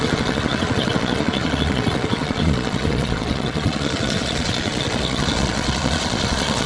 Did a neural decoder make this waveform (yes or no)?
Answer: yes